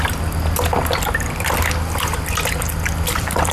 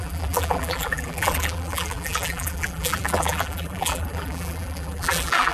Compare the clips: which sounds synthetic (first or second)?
second